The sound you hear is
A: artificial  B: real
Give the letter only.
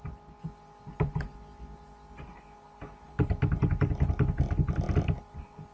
B